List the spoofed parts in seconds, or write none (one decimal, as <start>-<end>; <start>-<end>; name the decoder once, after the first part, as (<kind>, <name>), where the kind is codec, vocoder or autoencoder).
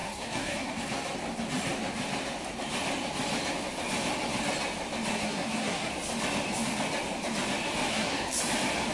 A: 0.0-0.8 (codec, SNAC); 5.1-5.9; 7.9-8.4